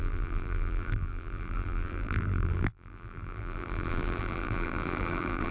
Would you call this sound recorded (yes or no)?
no